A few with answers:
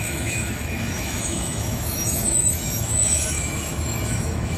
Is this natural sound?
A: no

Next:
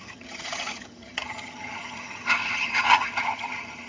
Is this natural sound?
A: no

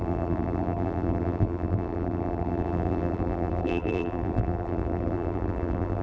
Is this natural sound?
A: no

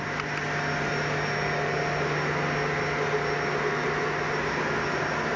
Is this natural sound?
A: yes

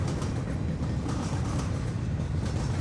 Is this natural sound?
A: yes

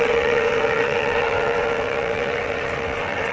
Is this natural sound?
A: no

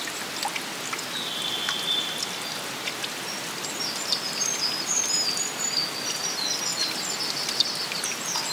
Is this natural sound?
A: yes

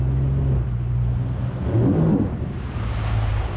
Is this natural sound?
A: yes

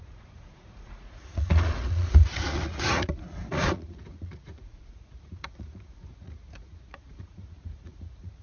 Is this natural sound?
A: no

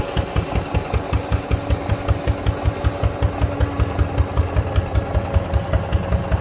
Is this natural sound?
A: yes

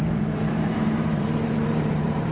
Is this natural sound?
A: no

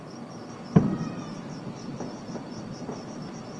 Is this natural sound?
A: no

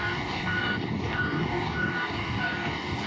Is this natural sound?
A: no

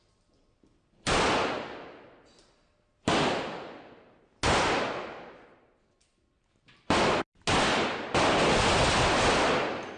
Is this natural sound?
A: yes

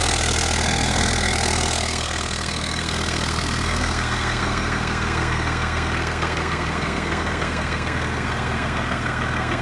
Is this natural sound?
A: no